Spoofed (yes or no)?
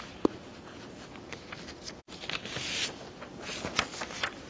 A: no